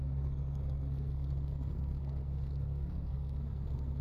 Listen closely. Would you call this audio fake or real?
fake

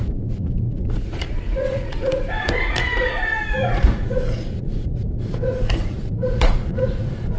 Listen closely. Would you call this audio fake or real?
fake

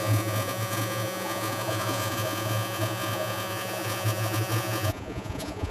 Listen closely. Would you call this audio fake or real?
fake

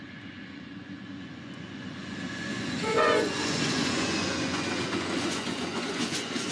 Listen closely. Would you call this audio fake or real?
fake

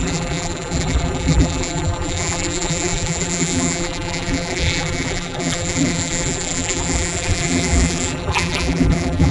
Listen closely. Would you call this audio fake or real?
fake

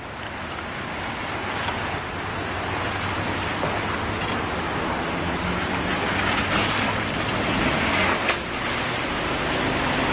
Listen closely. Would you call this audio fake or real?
real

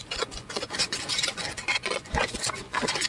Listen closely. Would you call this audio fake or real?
fake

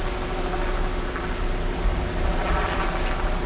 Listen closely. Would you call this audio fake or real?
real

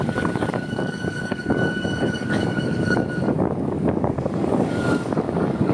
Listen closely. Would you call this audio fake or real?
fake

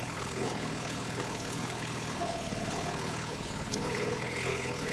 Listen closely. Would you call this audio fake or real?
fake